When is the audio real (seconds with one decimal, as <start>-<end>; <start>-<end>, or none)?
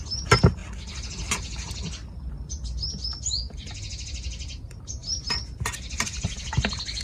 0.0-7.0